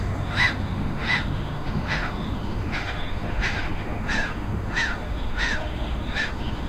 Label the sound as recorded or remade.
remade